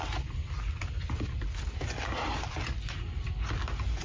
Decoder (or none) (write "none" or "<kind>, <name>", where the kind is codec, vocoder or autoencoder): none